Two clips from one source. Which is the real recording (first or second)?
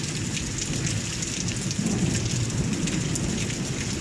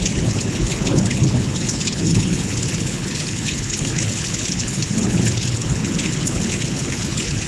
first